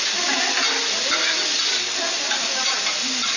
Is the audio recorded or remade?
recorded